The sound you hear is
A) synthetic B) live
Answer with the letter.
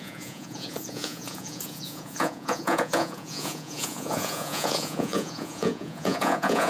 A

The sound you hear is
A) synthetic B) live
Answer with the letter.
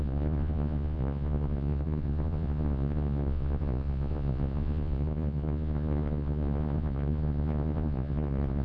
A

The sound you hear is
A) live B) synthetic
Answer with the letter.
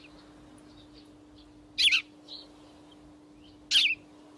A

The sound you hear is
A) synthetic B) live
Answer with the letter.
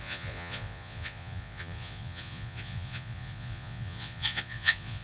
A